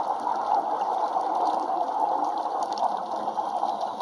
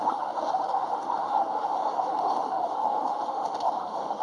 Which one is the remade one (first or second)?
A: second